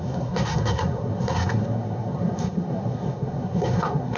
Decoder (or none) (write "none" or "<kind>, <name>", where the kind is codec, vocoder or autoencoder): codec, SNAC